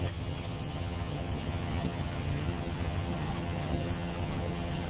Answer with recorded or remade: remade